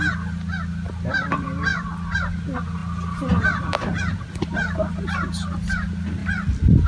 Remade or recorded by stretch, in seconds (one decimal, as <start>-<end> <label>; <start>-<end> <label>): 0.0-6.9 recorded